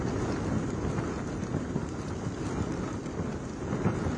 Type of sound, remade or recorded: recorded